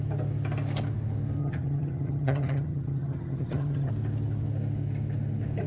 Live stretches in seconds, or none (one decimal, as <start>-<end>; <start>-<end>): 0.0-1.4; 3.9-5.7